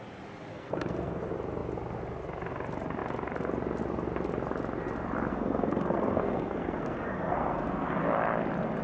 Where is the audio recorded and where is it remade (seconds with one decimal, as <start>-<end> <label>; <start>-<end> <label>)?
0.0-0.5 recorded; 0.5-1.2 remade; 1.2-5.3 recorded; 5.3-8.0 remade; 8.0-8.8 recorded